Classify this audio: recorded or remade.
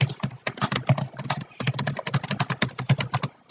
recorded